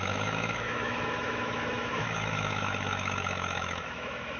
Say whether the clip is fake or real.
fake